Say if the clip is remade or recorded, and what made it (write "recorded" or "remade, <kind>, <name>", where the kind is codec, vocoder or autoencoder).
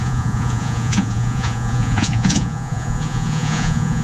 remade, vocoder, Vocos